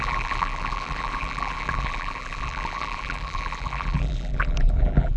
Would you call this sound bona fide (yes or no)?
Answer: no